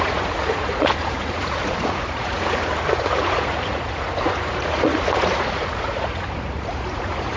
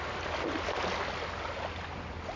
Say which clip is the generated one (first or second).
first